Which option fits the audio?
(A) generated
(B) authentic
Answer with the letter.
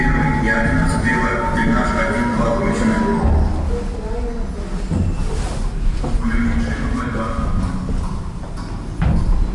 B